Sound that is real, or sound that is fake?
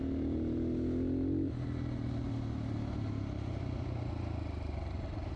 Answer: real